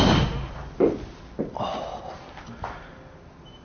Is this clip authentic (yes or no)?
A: yes